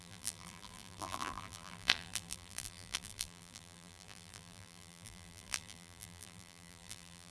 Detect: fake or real fake